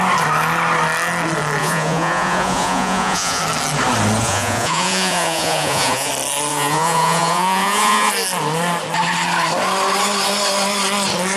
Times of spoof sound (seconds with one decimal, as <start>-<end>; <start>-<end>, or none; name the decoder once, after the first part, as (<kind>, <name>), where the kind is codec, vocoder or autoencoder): 1.6-3.4 (vocoder, Vocos); 4.2-6.1; 6.5-8.1